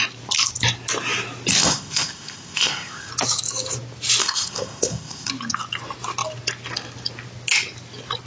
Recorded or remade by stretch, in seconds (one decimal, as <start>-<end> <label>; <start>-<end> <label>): 0.0-1.6 recorded; 1.6-3.1 remade; 3.1-4.2 recorded; 4.2-5.3 remade; 5.3-8.3 recorded